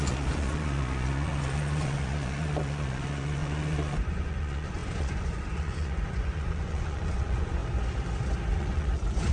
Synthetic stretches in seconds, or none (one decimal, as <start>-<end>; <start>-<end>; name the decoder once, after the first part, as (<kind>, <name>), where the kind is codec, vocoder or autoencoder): 0.0-7.6 (vocoder, Vocos); 8.5-9.3